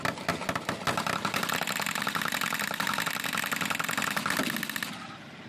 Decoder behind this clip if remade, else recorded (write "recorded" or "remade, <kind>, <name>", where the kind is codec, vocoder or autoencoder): recorded